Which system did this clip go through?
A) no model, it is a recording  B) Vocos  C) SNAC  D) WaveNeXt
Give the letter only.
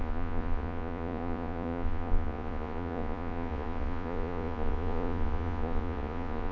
B